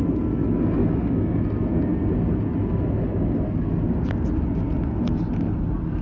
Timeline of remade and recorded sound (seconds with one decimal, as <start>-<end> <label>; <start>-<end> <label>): 0.0-0.8 recorded; 0.8-1.4 remade; 1.4-6.0 recorded